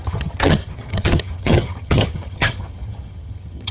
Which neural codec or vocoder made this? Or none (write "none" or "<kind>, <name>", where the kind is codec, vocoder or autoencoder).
vocoder, HiFi-GAN